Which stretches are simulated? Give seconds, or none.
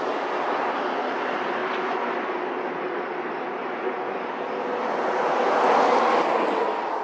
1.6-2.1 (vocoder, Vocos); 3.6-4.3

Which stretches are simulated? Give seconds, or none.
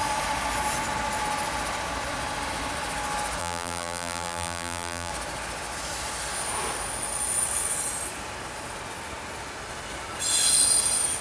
3.4-5.1 (vocoder, BigVGAN v2)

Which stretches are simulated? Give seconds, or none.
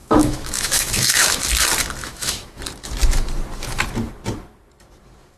0.0-1.4 (autoencoder, DAC-VAE); 2.0-2.6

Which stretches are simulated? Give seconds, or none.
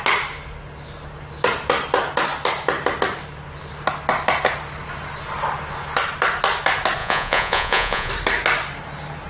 7.0-8.1 (vocoder, Vocos)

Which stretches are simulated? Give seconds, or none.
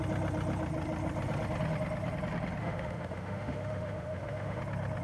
2.6-4.6 (autoencoder, DAC-VAE)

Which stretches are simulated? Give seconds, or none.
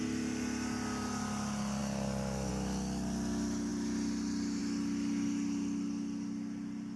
none